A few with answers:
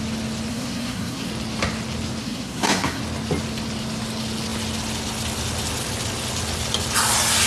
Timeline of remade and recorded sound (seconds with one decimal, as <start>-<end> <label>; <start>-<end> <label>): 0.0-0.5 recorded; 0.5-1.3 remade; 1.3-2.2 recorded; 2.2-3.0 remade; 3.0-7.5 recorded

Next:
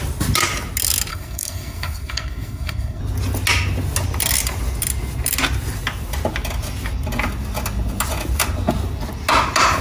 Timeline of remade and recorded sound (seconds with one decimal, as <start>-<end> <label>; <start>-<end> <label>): 0.0-1.1 recorded; 1.1-3.0 remade; 3.0-9.8 recorded

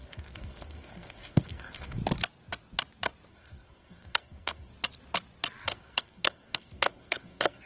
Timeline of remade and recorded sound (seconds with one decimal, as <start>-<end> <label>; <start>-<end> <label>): 0.0-2.0 remade; 2.0-3.3 recorded; 3.3-4.7 remade; 4.7-5.6 recorded; 5.6-7.7 remade